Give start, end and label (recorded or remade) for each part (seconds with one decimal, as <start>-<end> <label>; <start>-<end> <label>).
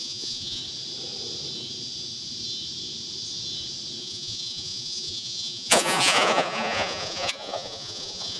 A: 0.0-0.6 remade; 0.6-4.0 recorded; 4.0-8.4 remade